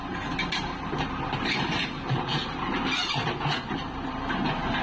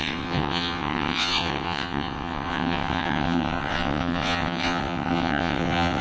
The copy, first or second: second